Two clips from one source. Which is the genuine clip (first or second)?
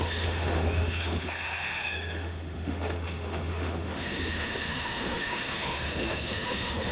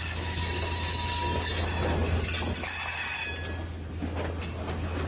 second